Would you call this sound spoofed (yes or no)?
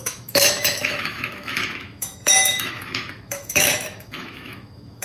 yes